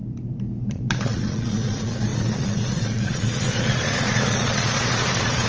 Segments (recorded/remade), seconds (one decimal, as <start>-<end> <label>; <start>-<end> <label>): 0.0-0.7 recorded; 0.7-5.5 remade